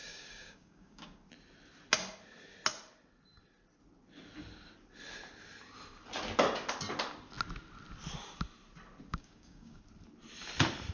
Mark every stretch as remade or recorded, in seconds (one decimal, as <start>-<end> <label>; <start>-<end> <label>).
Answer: 0.0-1.2 remade; 1.2-9.1 recorded; 9.1-9.8 remade; 9.8-10.9 recorded